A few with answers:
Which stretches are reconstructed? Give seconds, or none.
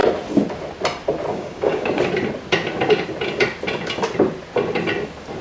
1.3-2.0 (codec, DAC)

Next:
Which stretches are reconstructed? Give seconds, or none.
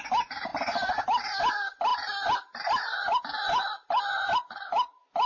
none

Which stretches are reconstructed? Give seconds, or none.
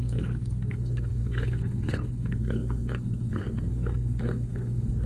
0.0-5.1 (codec, SNAC)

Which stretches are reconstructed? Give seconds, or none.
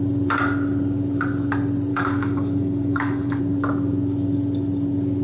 1.9-3.4 (codec, DAC)